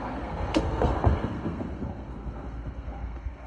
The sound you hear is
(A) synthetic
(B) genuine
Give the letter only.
A